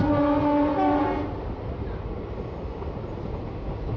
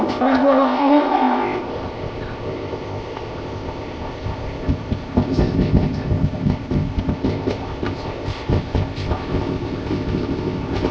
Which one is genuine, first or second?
first